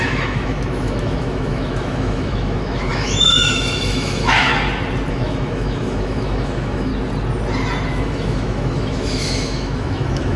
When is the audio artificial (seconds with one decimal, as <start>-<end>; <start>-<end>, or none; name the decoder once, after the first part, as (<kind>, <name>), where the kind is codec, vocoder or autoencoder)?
0.0-4.5 (autoencoder, DAC-VAE); 5.1-6.9; 7.9-10.4